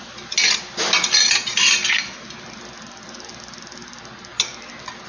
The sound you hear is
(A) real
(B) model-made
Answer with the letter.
A